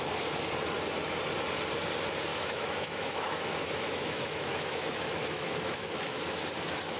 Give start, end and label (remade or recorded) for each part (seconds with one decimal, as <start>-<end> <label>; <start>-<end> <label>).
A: 0.0-2.3 recorded; 2.3-6.5 remade; 6.5-7.0 recorded